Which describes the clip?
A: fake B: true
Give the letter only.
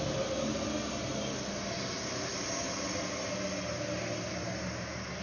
B